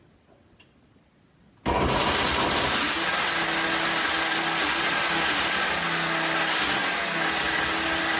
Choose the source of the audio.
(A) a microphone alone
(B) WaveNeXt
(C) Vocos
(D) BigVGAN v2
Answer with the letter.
A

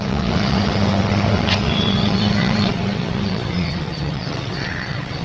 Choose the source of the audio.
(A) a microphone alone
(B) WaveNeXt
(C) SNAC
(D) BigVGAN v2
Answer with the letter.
B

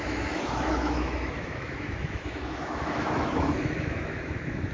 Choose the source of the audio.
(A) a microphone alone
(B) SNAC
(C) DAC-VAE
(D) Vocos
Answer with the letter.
C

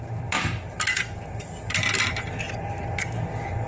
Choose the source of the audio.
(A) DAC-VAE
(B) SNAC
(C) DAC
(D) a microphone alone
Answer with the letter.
D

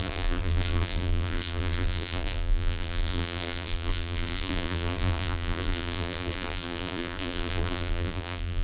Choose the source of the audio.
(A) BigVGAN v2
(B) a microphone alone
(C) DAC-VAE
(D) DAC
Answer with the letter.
A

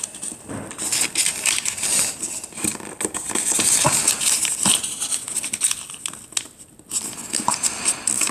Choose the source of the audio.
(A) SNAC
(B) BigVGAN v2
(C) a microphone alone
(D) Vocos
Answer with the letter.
C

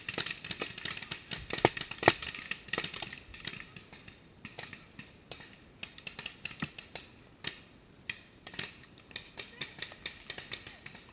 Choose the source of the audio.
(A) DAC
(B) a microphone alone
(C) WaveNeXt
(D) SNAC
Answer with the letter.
B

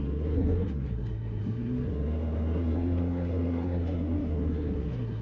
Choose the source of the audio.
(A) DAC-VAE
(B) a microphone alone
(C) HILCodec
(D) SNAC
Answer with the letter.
D